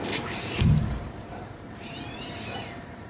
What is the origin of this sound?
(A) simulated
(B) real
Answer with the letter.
A